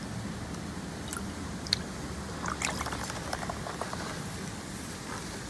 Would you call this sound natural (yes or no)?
yes